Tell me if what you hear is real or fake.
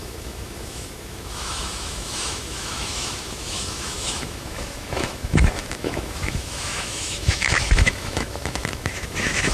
fake